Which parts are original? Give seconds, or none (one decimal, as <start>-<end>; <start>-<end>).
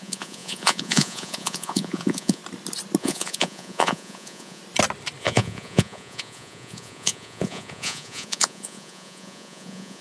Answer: 2.4-3.0; 4.6-5.2